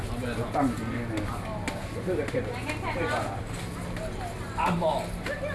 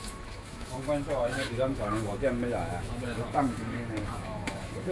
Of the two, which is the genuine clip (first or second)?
first